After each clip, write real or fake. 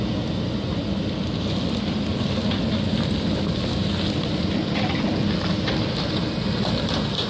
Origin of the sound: real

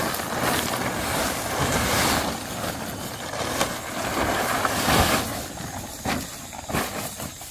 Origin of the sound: real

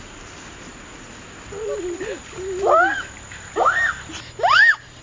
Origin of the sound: real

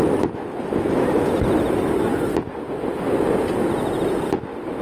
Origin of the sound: real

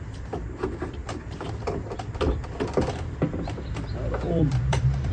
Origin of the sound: fake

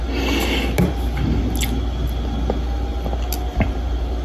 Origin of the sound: real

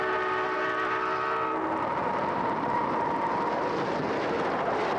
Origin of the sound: real